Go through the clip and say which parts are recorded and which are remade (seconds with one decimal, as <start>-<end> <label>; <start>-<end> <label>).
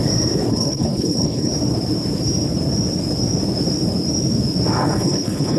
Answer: 0.0-0.5 recorded; 0.5-1.5 remade; 1.5-4.9 recorded; 4.9-5.6 remade